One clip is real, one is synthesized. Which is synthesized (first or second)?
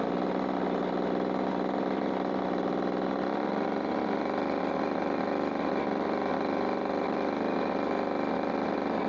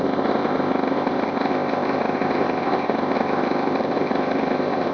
second